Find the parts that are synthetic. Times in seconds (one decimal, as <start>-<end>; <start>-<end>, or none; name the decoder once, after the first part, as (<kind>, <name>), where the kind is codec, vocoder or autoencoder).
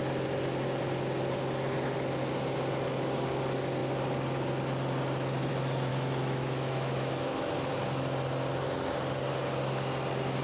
5.9-7.7 (autoencoder, DAC-VAE)